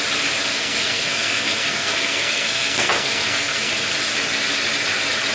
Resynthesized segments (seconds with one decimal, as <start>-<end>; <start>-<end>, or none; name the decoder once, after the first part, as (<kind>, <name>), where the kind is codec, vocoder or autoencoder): 0.5-3.7 (codec, SNAC)

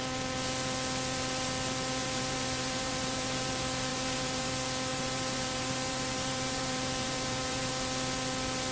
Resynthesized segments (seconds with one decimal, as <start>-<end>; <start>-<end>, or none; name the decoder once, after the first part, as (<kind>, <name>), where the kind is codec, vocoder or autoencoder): 2.0-3.5 (vocoder, BigVGAN v2); 3.9-4.5; 4.9-7.7

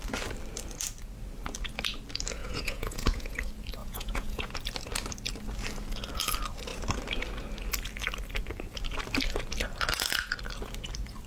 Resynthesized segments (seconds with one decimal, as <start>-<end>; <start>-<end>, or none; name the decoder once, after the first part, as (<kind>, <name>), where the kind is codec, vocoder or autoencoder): 2.4-3.4 (vocoder, Vocos); 3.8-4.5

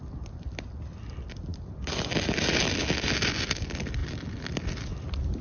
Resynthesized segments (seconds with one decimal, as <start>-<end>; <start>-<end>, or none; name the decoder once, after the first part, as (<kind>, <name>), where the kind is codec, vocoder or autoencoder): none

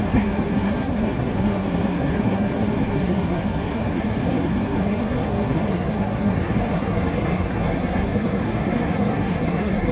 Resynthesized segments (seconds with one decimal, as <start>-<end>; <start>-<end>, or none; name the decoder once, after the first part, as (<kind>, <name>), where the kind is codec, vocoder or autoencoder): 0.0-9.9 (codec, SNAC)